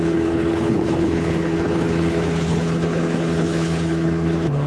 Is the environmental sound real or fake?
fake